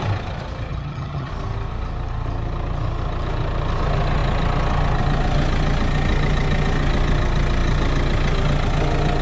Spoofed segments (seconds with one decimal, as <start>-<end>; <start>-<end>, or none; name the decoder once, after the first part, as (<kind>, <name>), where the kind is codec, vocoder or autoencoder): 0.7-1.3 (vocoder, HiFi-GAN)